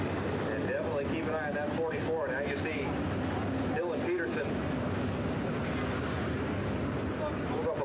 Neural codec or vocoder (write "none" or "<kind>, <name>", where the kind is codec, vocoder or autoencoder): none